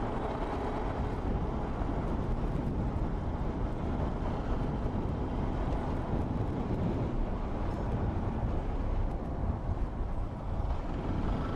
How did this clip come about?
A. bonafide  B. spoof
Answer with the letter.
A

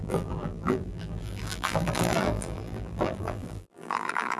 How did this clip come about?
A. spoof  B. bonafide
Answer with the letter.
A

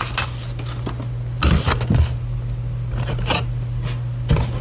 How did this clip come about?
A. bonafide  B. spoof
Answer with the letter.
A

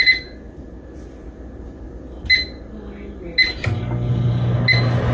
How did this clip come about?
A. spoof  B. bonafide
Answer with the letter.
B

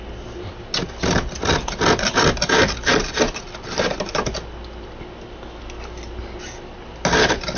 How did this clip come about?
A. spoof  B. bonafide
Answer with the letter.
B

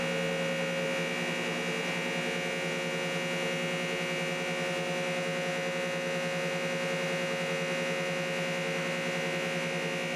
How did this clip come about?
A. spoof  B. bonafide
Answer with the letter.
B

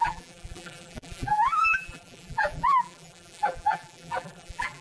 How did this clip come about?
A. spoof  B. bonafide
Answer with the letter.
A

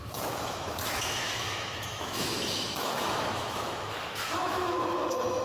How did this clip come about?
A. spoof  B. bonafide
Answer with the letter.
A